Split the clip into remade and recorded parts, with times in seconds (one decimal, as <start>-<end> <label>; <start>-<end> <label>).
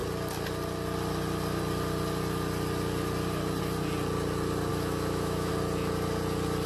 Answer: 0.0-4.7 recorded; 4.7-5.5 remade; 5.5-6.7 recorded